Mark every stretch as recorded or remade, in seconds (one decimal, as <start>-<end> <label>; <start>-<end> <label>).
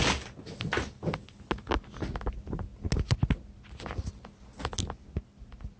0.0-5.8 recorded